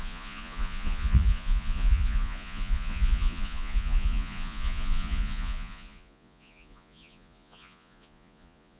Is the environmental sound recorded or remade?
remade